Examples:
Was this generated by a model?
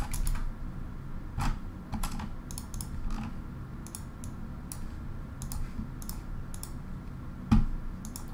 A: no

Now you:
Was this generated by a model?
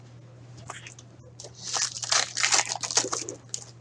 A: no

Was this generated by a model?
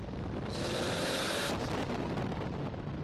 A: no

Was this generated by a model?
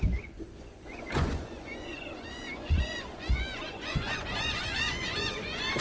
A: yes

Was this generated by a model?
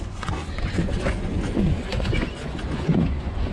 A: yes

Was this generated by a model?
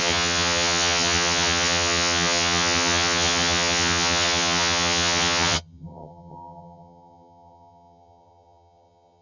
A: yes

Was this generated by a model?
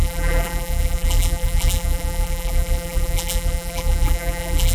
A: yes